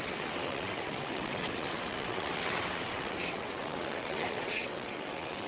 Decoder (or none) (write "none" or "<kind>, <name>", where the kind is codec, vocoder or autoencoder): vocoder, WaveNeXt